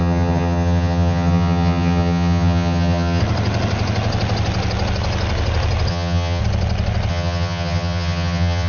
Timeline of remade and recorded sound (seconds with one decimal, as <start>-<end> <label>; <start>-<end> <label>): 0.0-3.2 remade; 3.2-5.9 recorded; 5.9-6.4 remade; 6.4-7.1 recorded; 7.1-8.7 remade